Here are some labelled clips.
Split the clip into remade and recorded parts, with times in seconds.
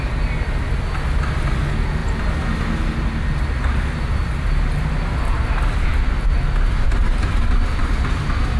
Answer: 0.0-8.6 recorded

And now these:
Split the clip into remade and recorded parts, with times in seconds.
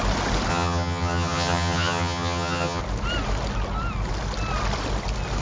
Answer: 0.0-0.5 recorded; 0.5-2.8 remade; 2.8-5.4 recorded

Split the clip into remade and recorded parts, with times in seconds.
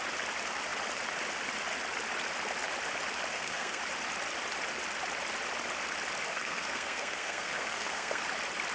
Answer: 0.0-3.3 recorded; 3.3-3.8 remade; 3.8-6.3 recorded; 6.3-8.2 remade; 8.2-8.7 recorded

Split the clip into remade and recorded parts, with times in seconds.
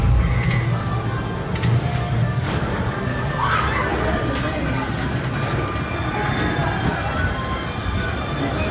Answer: 0.0-1.9 recorded; 1.9-2.9 remade; 2.9-8.7 recorded